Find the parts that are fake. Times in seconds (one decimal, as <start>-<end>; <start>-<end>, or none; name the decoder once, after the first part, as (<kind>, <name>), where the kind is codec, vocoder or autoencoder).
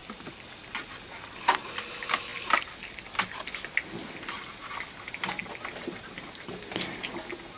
none